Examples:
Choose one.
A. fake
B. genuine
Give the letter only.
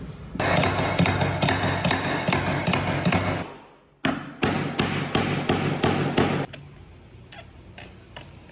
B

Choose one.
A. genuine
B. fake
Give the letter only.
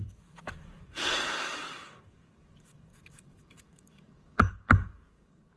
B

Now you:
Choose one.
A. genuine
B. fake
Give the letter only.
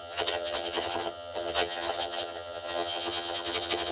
B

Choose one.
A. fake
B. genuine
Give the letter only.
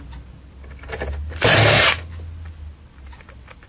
B